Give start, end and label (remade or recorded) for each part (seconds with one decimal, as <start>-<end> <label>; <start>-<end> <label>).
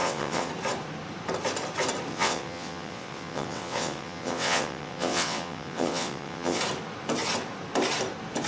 0.0-0.5 remade; 0.5-2.1 recorded; 2.1-6.6 remade; 6.6-8.5 recorded